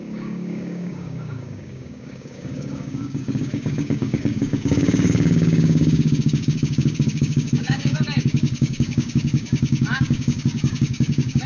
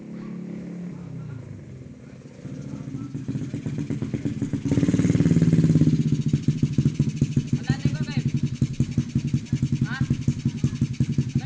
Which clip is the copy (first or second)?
first